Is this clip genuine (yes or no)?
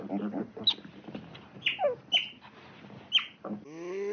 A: yes